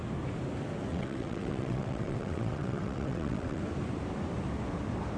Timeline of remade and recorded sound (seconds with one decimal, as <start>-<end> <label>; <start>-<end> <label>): 0.0-0.9 recorded; 0.9-3.6 remade; 3.6-5.2 recorded